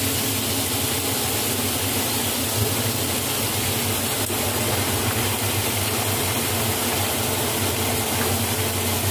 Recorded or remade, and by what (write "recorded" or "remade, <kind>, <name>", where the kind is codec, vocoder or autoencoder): recorded